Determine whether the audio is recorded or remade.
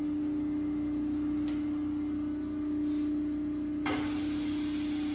recorded